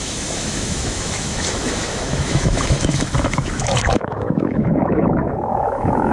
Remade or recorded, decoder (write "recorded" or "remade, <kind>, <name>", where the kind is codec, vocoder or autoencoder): remade, autoencoder, DAC-VAE